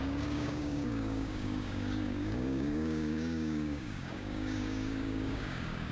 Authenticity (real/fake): fake